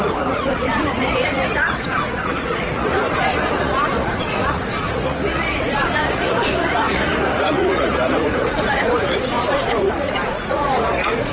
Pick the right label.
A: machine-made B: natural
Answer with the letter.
A